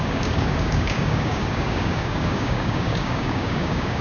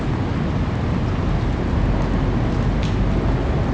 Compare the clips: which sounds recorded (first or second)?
second